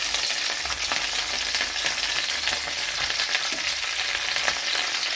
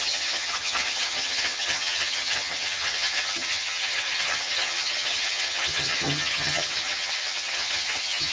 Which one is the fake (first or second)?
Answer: second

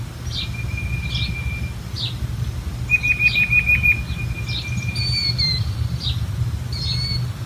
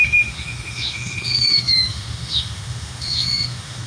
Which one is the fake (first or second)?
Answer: second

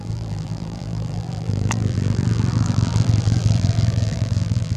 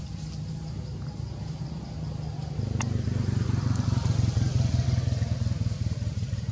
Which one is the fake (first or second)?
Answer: first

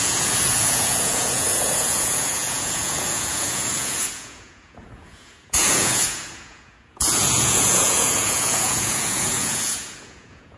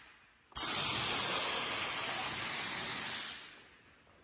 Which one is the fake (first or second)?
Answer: first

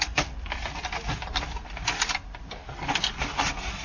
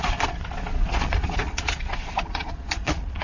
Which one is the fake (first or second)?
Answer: second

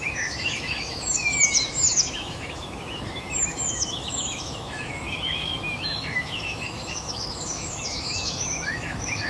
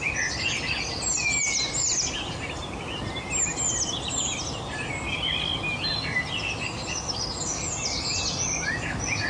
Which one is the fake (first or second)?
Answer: first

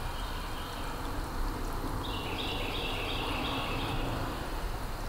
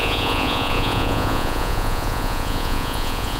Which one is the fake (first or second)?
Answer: second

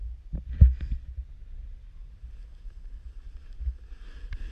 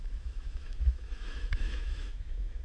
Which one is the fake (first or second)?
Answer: second